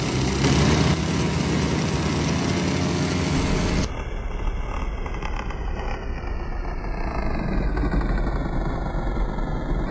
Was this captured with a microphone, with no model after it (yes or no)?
yes